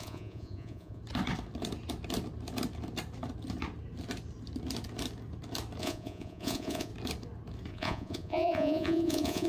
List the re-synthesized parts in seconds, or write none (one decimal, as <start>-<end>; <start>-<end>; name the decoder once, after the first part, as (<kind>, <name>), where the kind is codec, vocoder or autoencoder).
0.0-1.0 (vocoder, Vocos); 5.8-6.9; 7.7-9.5